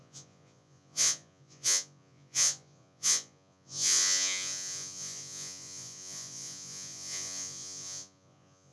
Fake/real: fake